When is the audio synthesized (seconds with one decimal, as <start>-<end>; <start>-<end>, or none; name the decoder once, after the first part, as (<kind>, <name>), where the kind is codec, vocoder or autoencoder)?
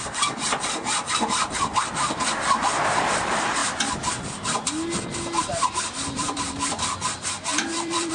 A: 0.0-3.6 (vocoder, BigVGAN v2); 5.4-8.1